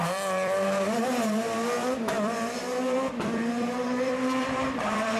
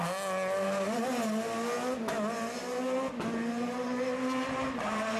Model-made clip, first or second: first